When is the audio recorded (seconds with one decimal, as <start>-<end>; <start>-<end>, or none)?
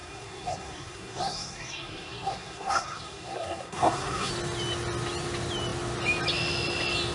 4.3-7.1